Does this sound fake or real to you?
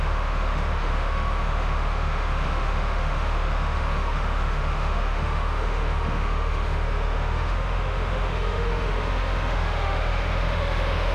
fake